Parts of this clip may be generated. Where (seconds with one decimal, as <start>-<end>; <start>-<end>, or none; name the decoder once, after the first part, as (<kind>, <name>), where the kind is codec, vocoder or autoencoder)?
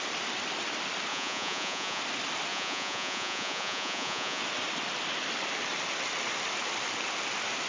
1.1-2.0 (vocoder, Vocos); 2.5-4.4